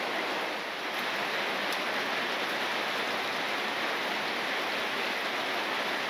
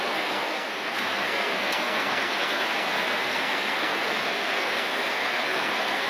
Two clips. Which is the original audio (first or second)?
first